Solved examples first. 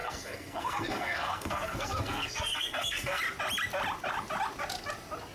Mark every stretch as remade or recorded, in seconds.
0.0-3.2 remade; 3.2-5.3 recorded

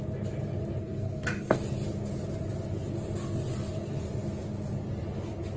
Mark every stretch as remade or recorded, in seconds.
0.0-0.8 recorded; 0.8-1.6 remade; 1.6-5.6 recorded

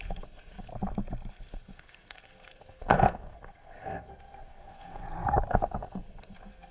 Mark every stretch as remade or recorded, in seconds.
0.0-0.7 remade; 0.7-1.3 recorded; 1.3-5.0 remade; 5.0-5.5 recorded; 5.5-6.7 remade

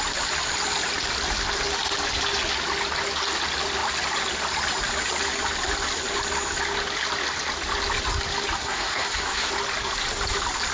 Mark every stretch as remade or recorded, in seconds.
0.0-8.6 recorded; 8.6-9.5 remade; 9.5-10.7 recorded

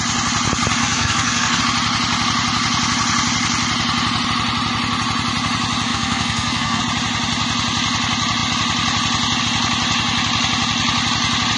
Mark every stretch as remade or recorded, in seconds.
0.0-0.8 recorded; 0.8-1.6 remade; 1.6-5.9 recorded; 5.9-6.8 remade; 6.8-11.6 recorded

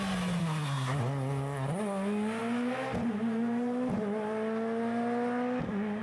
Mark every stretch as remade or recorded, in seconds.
0.0-0.4 recorded; 0.4-1.0 remade; 1.0-6.0 recorded

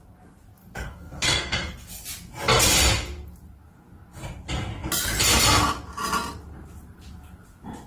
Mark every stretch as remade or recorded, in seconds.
0.0-0.6 recorded; 0.6-2.0 remade; 2.0-7.9 recorded